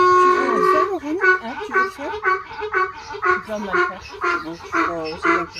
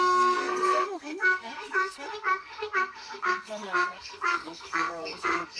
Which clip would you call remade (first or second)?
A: second